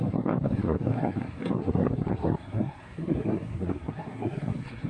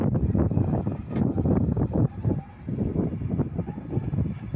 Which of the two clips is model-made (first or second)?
first